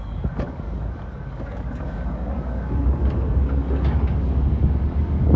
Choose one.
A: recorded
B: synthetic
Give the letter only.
B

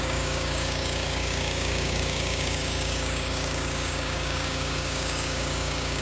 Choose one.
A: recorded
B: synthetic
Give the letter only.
B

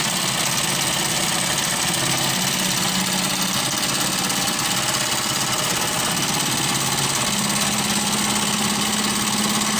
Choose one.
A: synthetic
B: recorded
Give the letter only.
B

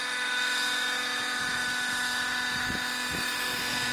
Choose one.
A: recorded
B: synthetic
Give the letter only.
A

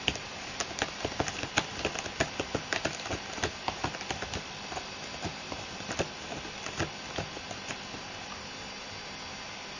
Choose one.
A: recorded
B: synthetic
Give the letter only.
A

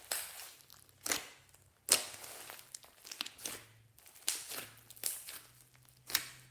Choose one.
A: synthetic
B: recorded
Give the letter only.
B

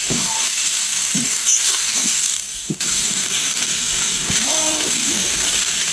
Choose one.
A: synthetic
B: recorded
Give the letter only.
A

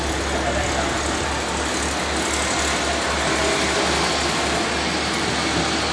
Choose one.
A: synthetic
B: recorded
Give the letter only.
B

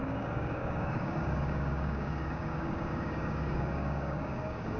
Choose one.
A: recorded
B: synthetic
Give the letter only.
B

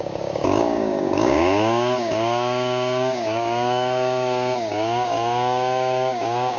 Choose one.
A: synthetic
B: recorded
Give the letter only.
A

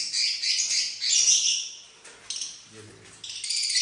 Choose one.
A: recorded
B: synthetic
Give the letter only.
A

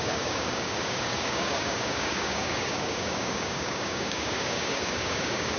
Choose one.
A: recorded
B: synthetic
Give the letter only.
B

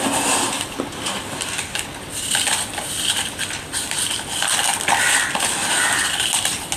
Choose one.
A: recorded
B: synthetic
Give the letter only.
A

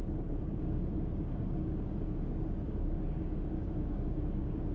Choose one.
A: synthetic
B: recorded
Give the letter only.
A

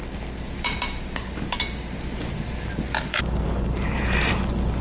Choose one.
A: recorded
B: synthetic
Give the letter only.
A